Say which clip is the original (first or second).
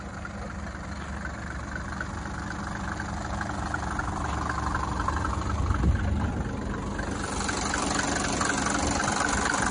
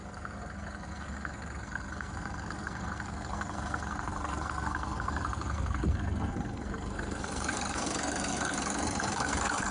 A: first